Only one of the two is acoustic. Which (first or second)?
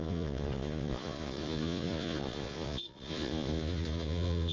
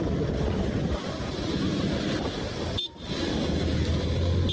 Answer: second